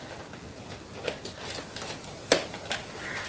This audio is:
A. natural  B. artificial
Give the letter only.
A